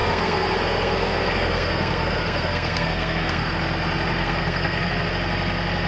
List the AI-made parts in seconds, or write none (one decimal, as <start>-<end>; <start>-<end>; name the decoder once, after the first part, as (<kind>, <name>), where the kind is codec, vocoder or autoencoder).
0.0-3.5 (codec, SNAC); 4.2-5.1